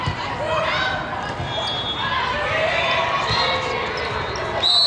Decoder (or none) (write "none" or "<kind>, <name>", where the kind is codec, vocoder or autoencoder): none